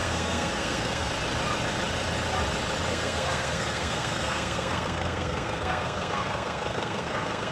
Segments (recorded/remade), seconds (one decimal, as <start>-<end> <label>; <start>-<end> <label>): 0.0-1.1 remade; 1.1-2.9 recorded; 2.9-7.5 remade